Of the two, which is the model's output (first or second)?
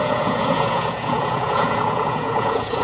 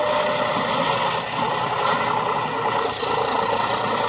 first